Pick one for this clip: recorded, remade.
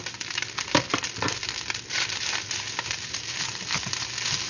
recorded